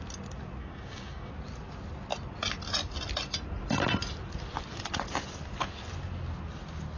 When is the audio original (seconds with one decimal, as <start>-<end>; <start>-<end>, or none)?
0.0-0.6; 1.3-7.0